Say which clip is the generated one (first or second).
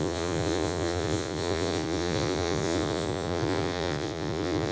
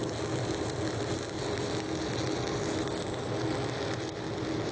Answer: first